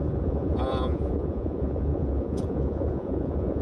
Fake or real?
fake